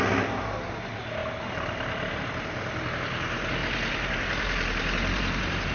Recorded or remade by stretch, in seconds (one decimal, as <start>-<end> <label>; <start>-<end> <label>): 0.0-3.6 recorded; 3.6-5.7 remade